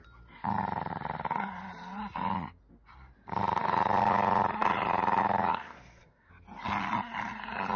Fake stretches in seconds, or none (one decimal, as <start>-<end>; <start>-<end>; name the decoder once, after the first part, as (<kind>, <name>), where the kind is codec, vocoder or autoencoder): 5.5-6.3 (codec, SNAC)